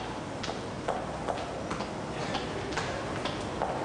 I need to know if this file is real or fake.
real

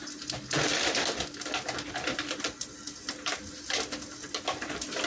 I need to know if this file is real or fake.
real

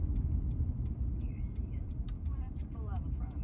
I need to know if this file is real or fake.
fake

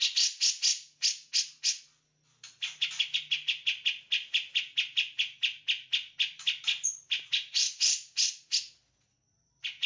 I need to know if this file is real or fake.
real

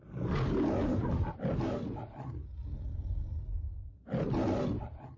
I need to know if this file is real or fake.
real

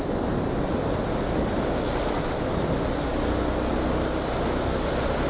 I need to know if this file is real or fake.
real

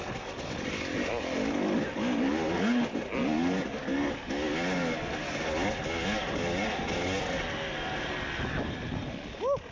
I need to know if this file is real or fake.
real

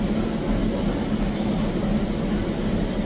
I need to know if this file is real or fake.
real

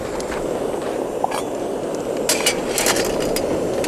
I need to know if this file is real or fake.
real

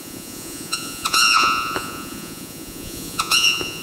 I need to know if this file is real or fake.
fake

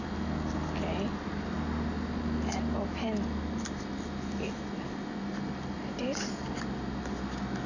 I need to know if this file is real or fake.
real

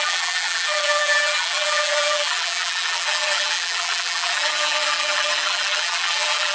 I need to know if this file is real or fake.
fake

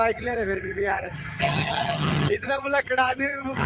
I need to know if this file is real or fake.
fake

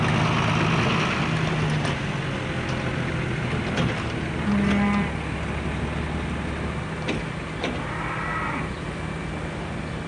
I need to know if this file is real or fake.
real